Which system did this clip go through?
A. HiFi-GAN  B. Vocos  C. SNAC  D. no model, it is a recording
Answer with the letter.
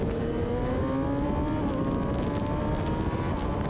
D